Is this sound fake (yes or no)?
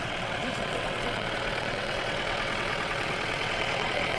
yes